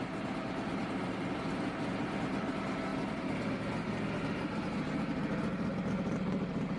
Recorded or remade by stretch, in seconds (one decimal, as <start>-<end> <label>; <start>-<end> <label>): 0.0-6.8 recorded